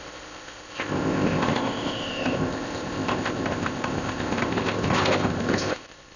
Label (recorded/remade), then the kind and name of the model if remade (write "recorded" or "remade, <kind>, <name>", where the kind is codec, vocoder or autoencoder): remade, codec, ZipCodec